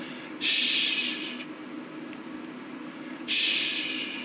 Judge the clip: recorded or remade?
recorded